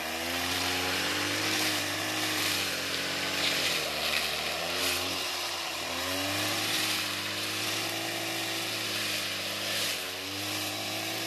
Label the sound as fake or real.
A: fake